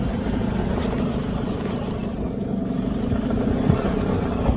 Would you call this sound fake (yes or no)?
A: no